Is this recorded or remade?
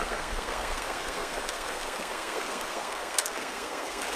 remade